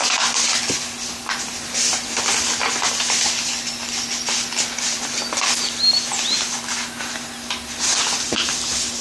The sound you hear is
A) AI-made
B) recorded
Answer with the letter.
B